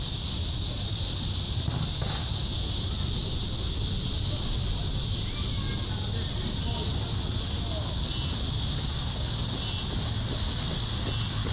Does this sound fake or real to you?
real